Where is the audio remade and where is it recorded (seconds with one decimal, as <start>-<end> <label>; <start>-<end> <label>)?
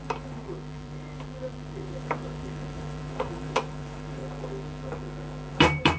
0.0-4.2 remade; 4.2-5.5 recorded; 5.5-6.0 remade